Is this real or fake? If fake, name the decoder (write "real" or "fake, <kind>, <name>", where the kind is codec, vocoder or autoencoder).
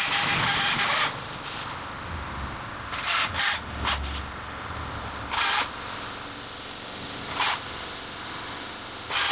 real